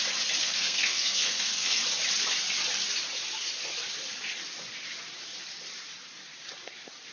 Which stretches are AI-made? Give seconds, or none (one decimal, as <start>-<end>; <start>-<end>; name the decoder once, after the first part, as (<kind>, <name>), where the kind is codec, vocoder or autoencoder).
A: 0.4-1.8 (codec, SNAC)